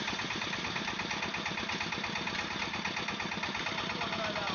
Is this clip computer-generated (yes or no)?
no